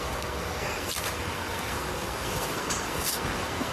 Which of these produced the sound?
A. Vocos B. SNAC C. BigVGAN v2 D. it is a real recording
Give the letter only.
B